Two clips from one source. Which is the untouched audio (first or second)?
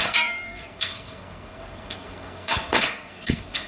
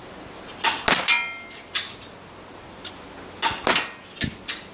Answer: second